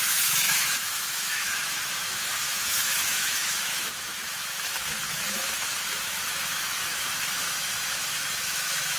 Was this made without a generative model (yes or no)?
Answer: no